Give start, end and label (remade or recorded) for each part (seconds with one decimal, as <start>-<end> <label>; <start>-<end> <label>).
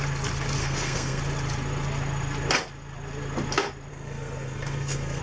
0.0-0.6 recorded; 0.6-1.2 remade; 1.2-3.9 recorded; 3.9-5.2 remade